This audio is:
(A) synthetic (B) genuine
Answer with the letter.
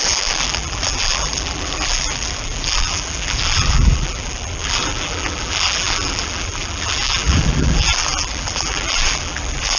A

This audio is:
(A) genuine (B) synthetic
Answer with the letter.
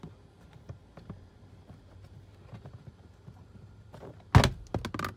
A